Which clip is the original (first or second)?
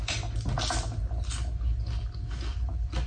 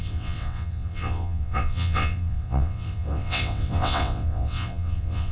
first